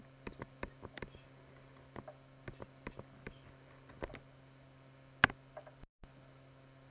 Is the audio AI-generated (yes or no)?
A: no